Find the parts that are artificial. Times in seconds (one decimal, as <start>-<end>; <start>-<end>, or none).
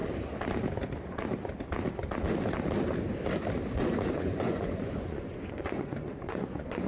4.1-6.9